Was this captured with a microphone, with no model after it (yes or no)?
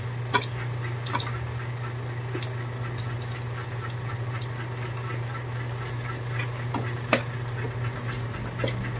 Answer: yes